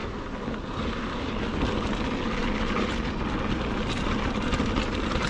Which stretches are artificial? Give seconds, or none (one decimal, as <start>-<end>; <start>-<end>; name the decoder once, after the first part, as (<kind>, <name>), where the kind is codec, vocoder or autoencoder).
none